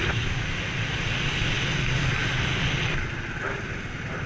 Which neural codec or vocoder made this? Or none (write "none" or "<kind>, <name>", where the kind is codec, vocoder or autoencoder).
none